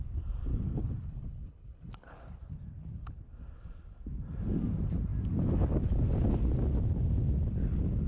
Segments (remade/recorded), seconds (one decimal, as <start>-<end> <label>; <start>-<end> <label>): 0.0-0.5 recorded; 0.5-2.4 remade; 2.4-8.1 recorded